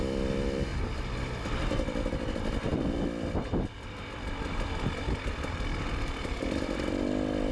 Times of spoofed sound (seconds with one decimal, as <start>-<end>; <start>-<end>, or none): 0.0-0.7; 2.1-7.5